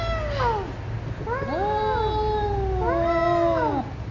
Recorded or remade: recorded